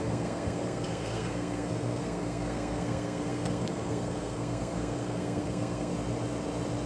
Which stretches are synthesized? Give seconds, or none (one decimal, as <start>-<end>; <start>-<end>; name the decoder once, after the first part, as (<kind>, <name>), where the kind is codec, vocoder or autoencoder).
0.0-5.9 (codec, SNAC)